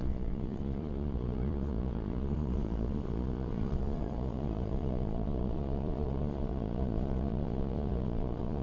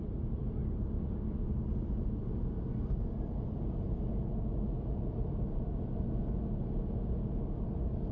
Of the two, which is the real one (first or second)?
second